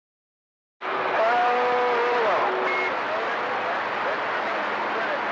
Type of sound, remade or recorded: recorded